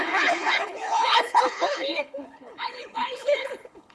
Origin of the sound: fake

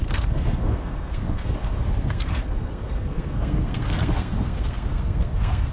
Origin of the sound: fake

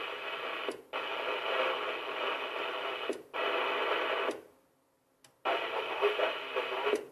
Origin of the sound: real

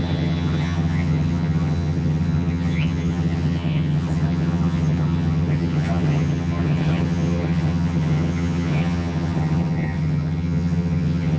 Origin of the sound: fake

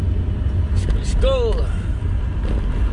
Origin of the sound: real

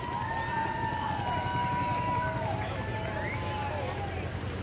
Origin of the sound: real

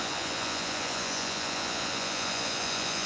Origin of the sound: fake